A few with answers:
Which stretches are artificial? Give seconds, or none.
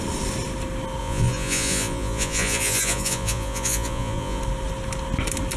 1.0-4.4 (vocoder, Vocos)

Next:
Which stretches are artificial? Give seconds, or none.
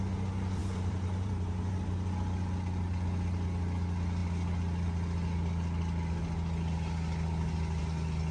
0.6-1.7 (vocoder, BigVGAN v2)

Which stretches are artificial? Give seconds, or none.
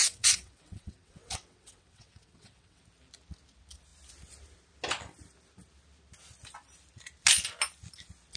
0.0-2.8 (vocoder, WaveNeXt)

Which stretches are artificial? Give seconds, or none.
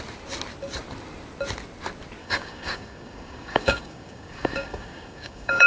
2.2-5.7 (codec, DAC)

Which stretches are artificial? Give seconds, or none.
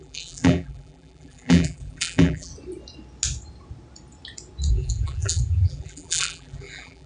0.0-2.5 (vocoder, BigVGAN v2); 4.7-7.1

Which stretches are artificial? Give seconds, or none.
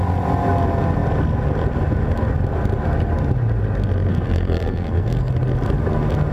4.1-5.3 (codec, SNAC)